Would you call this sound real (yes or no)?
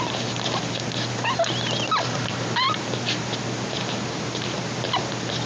yes